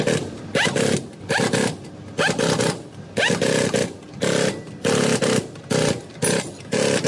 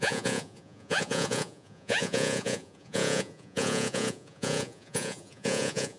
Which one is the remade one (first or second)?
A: second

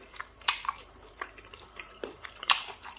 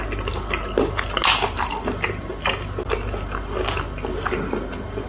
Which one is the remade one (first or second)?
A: first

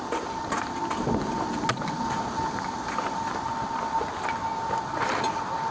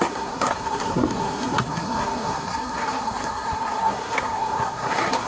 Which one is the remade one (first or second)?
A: second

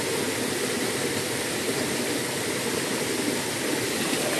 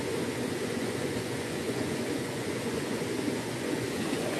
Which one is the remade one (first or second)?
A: second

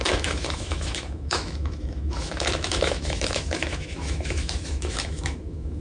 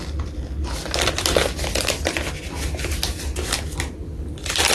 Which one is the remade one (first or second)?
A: first